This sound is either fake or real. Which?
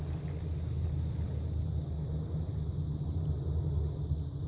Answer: real